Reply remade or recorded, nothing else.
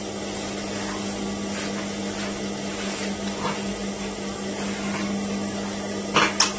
recorded